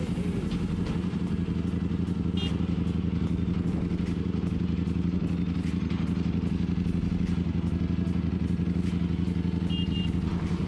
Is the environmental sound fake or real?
real